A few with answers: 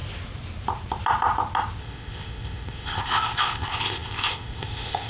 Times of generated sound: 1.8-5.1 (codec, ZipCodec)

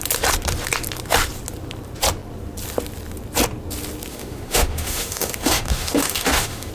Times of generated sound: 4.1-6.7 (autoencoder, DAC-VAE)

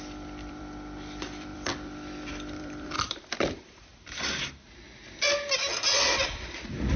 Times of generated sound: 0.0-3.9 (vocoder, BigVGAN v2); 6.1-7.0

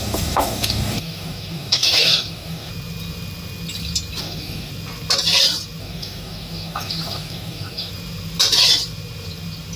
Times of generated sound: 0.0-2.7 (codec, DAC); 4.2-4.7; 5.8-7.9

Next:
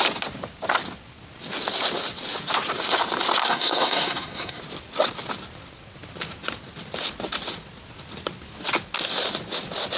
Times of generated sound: 3.4-4.6 (codec, SNAC)

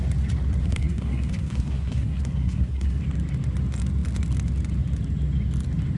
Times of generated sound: 0.6-3.0 (codec, SNAC)

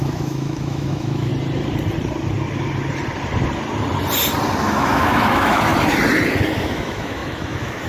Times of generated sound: 0.0-1.3 (autoencoder, DAC-VAE); 4.6-5.7; 6.6-7.9

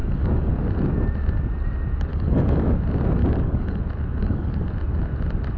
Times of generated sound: 0.0-0.5 (codec, DAC); 2.1-2.8; 3.2-3.8; 4.2-4.7